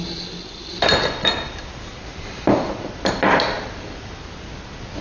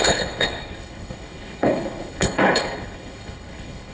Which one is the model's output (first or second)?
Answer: second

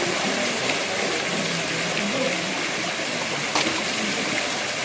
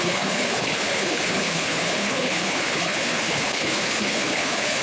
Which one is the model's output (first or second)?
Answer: second